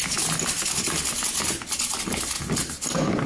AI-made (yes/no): no